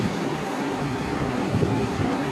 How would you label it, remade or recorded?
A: remade